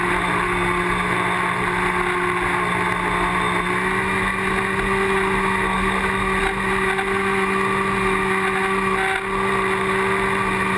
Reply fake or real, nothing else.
real